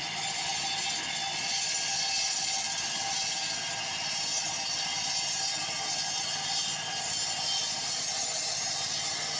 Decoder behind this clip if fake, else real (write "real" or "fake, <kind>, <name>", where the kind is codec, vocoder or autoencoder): real